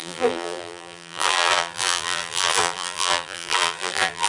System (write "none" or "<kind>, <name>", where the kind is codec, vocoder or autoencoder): vocoder, BigVGAN v2